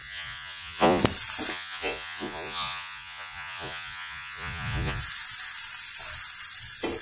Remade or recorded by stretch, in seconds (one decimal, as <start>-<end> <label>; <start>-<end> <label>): 0.0-1.0 remade; 1.0-1.5 recorded; 1.5-5.0 remade; 5.0-7.0 recorded